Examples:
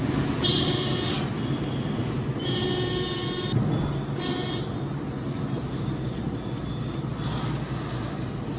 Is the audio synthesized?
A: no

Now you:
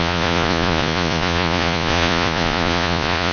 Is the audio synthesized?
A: yes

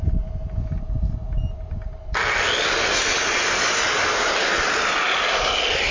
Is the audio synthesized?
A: no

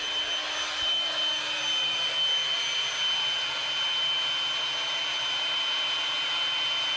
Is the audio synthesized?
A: no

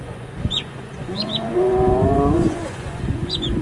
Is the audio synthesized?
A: yes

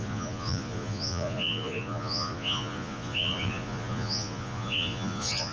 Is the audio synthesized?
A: yes